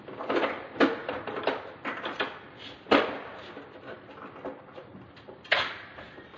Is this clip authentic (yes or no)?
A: yes